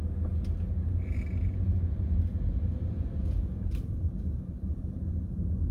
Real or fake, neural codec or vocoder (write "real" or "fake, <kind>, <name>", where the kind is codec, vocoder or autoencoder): real